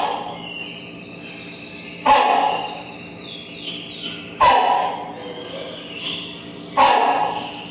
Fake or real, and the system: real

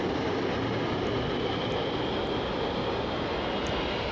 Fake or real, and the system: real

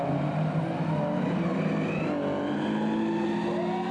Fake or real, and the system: real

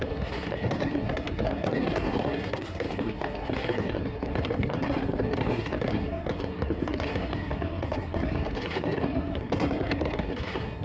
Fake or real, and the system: fake, codec, SNAC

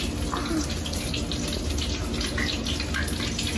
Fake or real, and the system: real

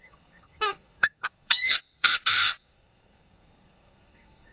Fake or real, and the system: fake, codec, SNAC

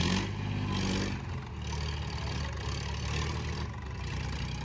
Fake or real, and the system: real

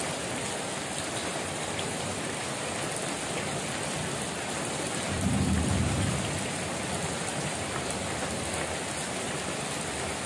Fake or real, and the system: real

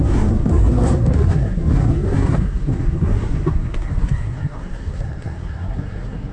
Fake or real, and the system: fake, codec, SNAC